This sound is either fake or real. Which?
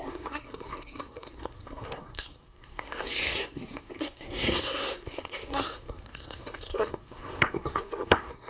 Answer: fake